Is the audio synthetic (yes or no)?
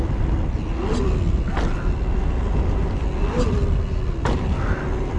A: no